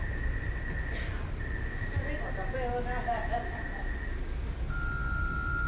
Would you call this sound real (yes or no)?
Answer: yes